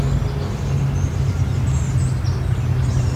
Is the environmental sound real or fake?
real